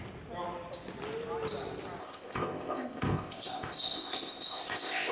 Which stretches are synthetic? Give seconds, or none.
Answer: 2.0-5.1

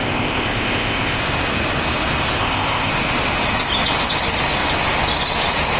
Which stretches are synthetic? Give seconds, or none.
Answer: 0.0-1.2; 2.4-2.9

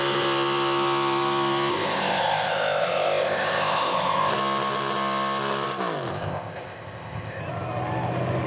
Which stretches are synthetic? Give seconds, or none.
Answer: 1.7-4.3; 6.1-7.4

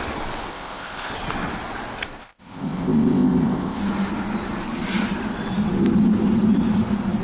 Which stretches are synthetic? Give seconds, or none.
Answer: 0.5-1.1; 2.2-3.8